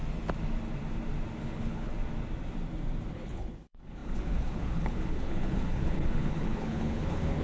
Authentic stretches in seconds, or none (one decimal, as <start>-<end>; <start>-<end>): 0.0-1.4; 1.9-3.1